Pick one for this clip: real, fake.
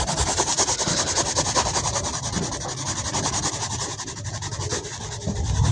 real